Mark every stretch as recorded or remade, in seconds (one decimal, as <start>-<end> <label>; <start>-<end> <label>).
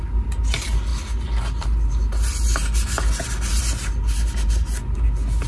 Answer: 0.0-5.5 recorded